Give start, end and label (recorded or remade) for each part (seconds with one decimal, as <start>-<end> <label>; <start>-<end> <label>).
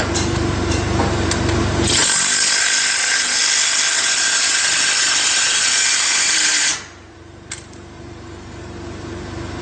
0.0-3.4 remade; 3.4-4.0 recorded; 4.0-9.6 remade